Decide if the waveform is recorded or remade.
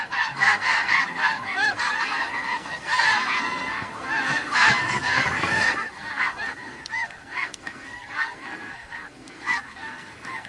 remade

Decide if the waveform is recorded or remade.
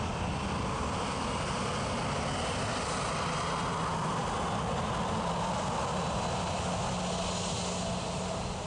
recorded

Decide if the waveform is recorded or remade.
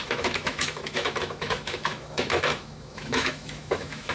remade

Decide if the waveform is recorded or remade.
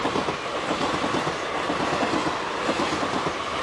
recorded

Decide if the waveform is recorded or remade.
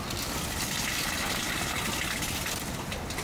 recorded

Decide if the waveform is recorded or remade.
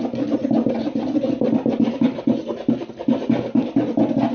recorded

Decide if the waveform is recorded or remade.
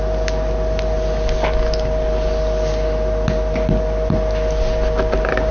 recorded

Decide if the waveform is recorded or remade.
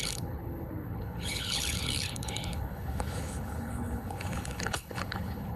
remade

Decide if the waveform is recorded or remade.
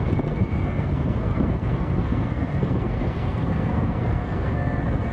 remade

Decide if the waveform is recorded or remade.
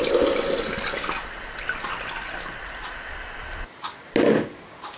recorded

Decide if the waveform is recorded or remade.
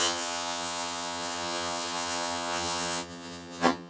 remade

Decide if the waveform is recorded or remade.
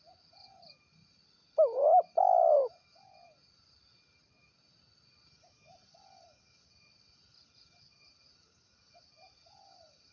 recorded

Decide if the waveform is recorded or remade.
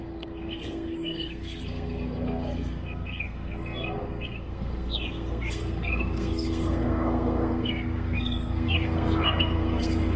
remade